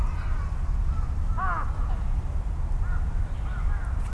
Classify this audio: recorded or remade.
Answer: recorded